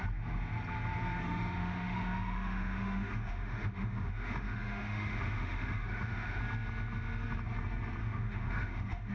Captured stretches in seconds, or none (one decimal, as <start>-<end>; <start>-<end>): 0.0-1.2; 6.4-8.0

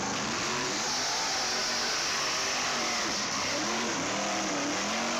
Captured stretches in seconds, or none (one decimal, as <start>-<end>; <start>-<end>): 0.0-1.6; 4.7-5.2